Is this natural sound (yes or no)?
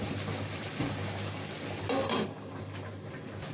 yes